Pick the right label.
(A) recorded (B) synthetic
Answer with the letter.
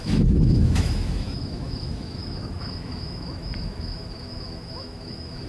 B